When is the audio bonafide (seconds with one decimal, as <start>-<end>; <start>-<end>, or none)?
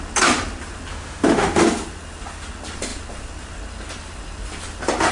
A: 0.0-0.9; 1.6-5.1